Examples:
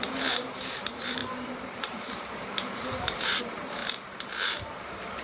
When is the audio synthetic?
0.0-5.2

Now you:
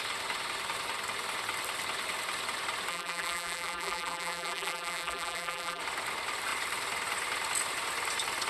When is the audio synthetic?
2.9-5.8

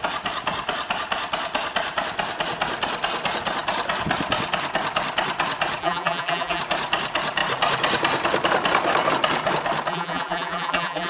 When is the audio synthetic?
5.8-6.6; 9.9-11.1

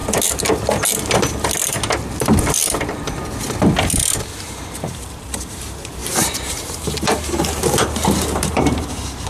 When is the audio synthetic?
4.5-9.3